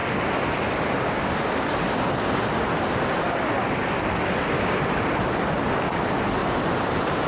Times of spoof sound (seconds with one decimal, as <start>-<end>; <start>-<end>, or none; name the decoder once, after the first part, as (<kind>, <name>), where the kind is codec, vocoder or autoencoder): 6.4-7.3 (vocoder, BigVGAN v2)